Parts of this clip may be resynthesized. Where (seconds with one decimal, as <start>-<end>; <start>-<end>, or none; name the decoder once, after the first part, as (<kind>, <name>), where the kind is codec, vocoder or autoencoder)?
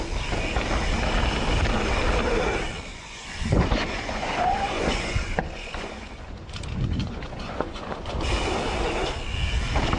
2.9-8.1 (vocoder, Vocos)